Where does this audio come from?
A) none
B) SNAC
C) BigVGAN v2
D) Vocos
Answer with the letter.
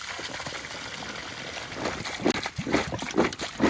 A